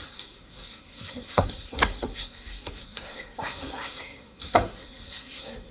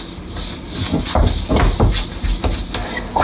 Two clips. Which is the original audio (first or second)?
second